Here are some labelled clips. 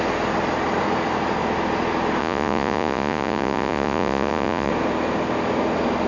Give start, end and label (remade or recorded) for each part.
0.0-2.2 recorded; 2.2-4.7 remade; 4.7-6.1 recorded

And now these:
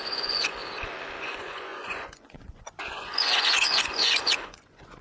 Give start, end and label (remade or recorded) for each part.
0.0-0.6 remade; 0.6-1.2 recorded; 1.2-5.0 remade

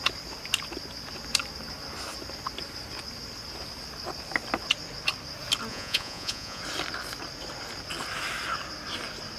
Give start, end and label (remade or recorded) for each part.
0.0-5.7 recorded; 5.7-6.6 remade; 6.6-9.4 recorded